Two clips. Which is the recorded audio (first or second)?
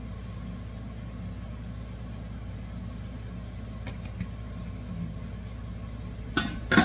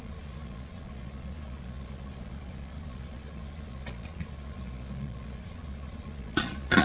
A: first